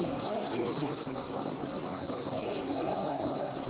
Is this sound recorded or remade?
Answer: remade